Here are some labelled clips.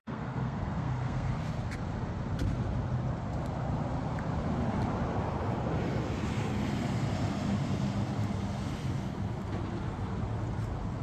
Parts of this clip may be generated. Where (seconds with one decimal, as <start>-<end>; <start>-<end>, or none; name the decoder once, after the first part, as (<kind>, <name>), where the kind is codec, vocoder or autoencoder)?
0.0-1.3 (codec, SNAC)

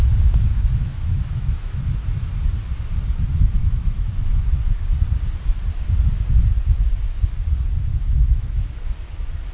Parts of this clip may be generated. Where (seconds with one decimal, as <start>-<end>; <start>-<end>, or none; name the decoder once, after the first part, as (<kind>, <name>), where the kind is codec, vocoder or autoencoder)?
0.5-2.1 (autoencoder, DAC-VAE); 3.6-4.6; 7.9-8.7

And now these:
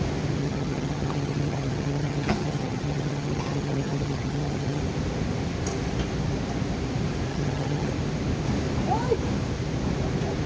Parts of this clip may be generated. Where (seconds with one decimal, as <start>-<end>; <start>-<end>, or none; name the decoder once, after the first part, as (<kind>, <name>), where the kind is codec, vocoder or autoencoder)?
0.4-4.8 (vocoder, HiFi-GAN); 7.3-7.9

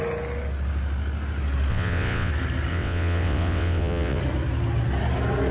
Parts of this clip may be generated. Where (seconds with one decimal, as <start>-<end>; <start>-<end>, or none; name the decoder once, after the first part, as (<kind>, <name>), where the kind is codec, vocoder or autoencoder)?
1.7-2.3 (vocoder, WaveNeXt); 2.7-4.2

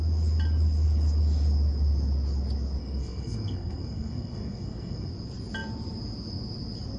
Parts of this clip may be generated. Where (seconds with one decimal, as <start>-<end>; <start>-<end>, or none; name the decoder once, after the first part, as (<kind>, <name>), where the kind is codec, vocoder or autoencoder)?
2.8-5.1 (codec, SNAC)

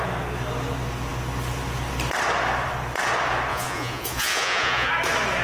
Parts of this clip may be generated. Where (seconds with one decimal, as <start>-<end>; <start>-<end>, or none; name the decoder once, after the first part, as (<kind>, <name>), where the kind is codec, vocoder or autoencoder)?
3.5-4.9 (vocoder, Vocos)

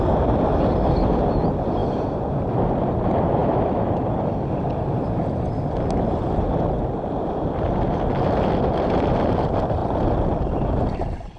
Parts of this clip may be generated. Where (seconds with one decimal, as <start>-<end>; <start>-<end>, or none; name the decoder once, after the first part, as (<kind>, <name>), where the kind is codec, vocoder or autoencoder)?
0.0-3.4 (vocoder, BigVGAN v2); 5.9-11.4